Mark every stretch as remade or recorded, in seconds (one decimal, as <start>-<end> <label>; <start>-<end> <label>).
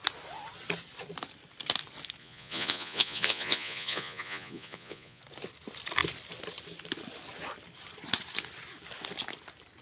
0.0-2.2 recorded; 2.2-5.2 remade; 5.2-9.8 recorded